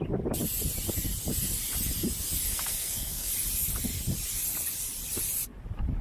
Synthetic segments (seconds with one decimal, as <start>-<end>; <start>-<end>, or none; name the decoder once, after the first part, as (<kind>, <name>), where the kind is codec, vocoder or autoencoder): 2.5-3.3 (codec, SNAC)